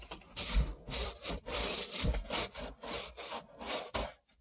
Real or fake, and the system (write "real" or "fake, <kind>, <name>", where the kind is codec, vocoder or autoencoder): fake, vocoder, BigVGAN v2